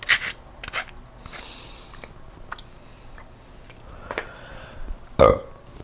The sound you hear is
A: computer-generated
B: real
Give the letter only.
B